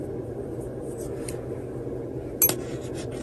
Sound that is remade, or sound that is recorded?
recorded